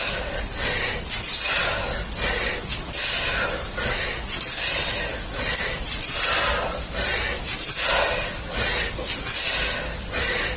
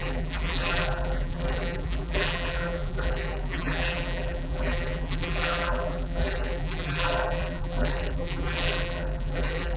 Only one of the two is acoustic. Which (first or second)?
first